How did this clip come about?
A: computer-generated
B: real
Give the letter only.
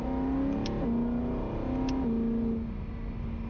B